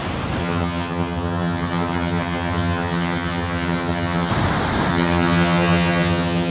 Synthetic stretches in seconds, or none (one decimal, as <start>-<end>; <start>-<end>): 0.4-4.3; 4.9-6.5